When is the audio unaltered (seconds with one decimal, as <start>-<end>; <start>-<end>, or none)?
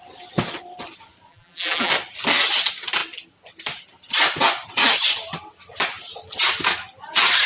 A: 0.0-1.3; 1.9-7.5